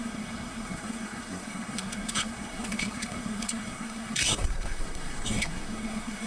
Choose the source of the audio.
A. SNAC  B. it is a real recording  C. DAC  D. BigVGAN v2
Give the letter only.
A